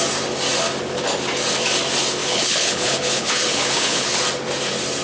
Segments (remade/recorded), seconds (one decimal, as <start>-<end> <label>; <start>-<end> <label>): 0.0-2.2 recorded; 2.2-4.2 remade; 4.2-5.0 recorded